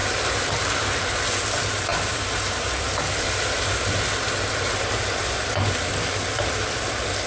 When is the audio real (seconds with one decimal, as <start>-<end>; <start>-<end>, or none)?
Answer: 0.5-1.9; 6.3-7.3